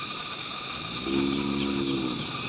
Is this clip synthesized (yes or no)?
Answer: no